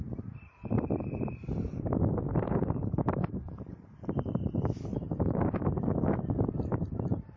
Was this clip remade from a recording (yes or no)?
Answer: yes